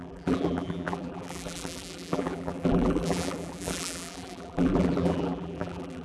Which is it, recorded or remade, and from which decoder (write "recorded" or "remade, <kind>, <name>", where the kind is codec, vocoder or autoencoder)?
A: remade, vocoder, BigVGAN v2